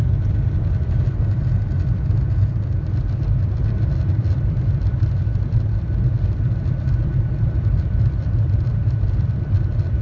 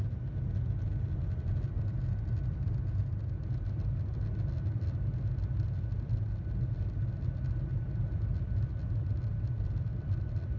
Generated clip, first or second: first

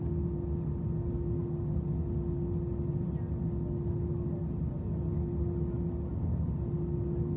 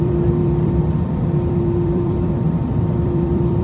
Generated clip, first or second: second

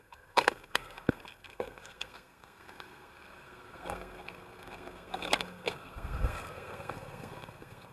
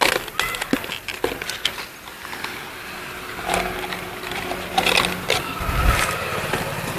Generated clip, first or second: first